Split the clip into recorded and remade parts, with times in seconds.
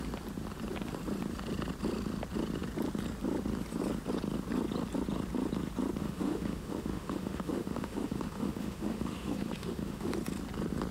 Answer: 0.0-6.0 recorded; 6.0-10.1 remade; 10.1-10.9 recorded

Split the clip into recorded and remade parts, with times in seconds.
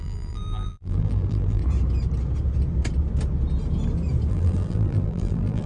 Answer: 0.0-1.6 remade; 1.6-4.3 recorded; 4.3-5.7 remade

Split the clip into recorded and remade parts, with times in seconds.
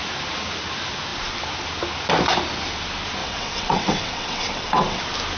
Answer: 0.0-3.2 recorded; 3.2-5.0 remade; 5.0-5.4 recorded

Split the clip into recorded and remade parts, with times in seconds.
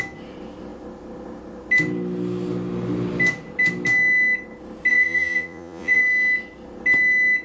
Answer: 0.0-4.9 recorded; 4.9-6.0 remade; 6.0-7.4 recorded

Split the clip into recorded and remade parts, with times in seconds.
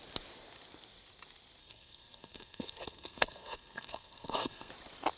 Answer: 0.0-1.6 recorded; 1.6-4.7 remade; 4.7-5.2 recorded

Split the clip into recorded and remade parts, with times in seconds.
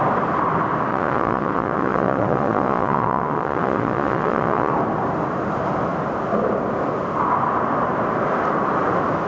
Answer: 0.0-0.9 recorded; 0.9-4.7 remade; 4.7-9.3 recorded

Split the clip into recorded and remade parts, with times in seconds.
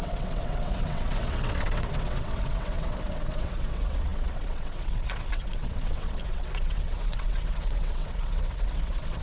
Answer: 0.0-9.2 remade